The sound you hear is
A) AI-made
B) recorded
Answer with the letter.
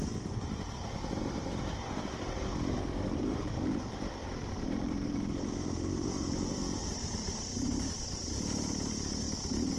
A